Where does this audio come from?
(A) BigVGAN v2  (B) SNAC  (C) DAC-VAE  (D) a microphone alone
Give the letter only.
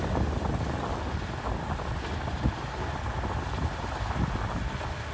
D